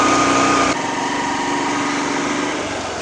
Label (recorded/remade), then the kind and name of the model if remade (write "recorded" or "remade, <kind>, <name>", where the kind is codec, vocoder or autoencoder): recorded